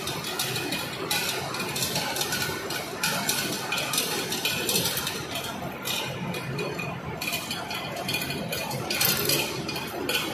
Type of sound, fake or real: real